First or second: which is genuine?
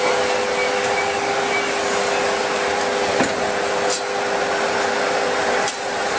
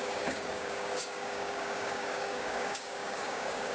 first